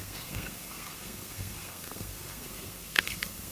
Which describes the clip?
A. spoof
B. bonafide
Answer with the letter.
A